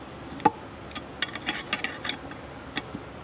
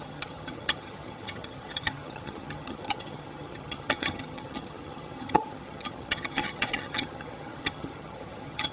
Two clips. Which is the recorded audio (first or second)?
first